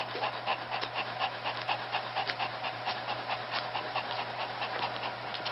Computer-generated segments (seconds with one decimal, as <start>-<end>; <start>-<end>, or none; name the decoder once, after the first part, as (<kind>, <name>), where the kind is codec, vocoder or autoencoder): none